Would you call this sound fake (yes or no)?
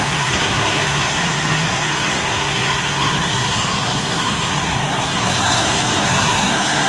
yes